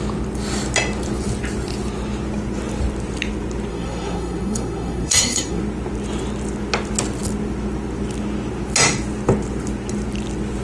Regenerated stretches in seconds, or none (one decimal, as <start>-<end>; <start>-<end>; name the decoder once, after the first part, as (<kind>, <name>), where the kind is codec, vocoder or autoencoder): 3.7-5.6 (codec, SNAC)